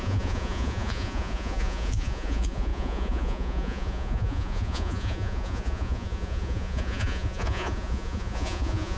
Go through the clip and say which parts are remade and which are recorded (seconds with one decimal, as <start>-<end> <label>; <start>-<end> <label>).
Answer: 0.0-9.0 remade